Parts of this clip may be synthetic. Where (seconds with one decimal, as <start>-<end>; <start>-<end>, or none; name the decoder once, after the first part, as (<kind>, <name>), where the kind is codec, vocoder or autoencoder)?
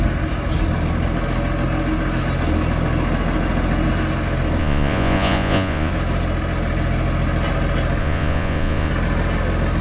4.6-5.9 (vocoder, Vocos); 8.0-8.9